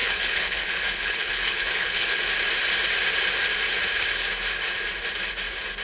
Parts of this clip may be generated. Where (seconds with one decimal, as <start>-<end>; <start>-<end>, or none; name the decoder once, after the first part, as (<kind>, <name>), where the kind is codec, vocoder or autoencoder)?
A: 0.0-2.2 (codec, HILCodec)